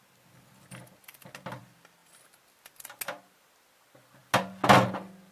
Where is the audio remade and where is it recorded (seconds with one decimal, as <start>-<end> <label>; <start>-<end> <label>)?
0.0-5.3 recorded